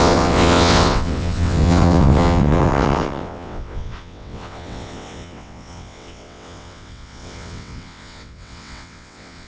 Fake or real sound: fake